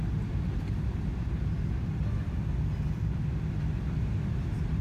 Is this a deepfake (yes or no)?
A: no